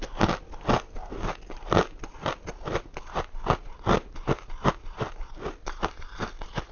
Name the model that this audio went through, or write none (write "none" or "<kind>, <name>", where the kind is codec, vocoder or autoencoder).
none